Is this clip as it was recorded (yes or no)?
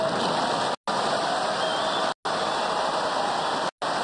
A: yes